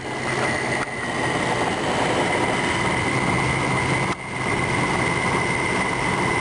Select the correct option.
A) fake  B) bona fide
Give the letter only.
B